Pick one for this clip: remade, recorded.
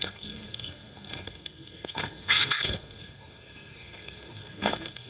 remade